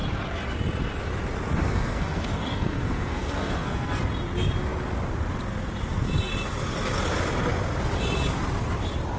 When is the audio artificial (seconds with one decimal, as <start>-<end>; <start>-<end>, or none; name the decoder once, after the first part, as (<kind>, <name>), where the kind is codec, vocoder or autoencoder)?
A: 1.6-4.0 (codec, SNAC)